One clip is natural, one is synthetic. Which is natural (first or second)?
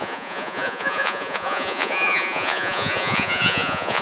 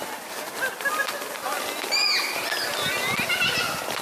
second